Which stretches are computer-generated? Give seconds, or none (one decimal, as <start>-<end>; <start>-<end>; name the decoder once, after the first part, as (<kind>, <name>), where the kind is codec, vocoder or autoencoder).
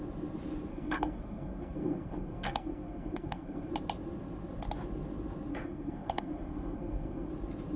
0.7-3.7 (codec, SNAC); 5.5-7.3